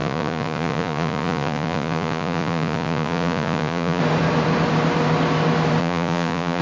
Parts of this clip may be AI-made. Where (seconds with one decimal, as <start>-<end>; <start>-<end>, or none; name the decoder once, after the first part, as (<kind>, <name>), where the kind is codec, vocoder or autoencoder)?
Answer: 0.0-4.0 (vocoder, Vocos); 5.8-6.6